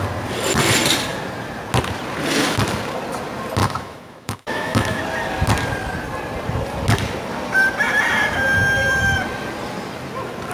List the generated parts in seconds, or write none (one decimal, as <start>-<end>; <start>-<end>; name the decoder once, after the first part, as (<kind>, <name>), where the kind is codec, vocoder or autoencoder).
3.6-5.0 (autoencoder, DAC-VAE)